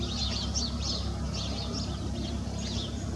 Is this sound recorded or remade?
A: recorded